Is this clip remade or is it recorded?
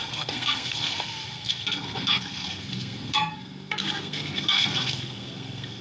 remade